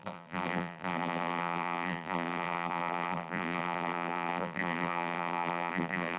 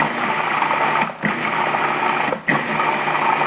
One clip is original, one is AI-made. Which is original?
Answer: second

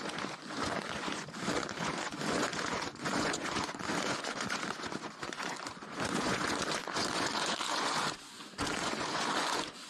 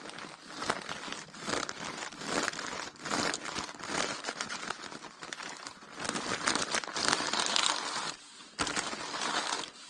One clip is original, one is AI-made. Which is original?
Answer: second